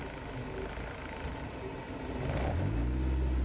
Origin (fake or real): real